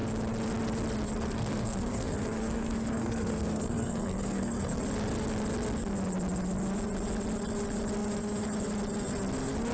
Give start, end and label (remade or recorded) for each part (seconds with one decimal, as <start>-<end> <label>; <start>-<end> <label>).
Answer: 0.0-1.2 recorded; 1.2-4.8 remade; 4.8-9.7 recorded